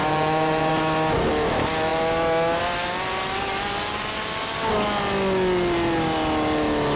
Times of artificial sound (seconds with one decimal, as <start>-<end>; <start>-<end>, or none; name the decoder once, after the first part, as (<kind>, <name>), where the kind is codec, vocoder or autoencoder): 0.0-0.7 (vocoder, BigVGAN v2)